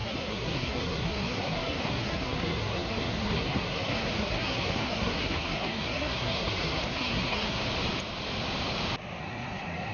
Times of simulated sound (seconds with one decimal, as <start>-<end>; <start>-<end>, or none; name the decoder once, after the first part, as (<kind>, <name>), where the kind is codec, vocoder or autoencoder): 0.0-7.6 (codec, SNAC); 9.2-9.9